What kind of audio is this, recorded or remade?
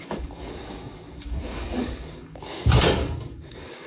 remade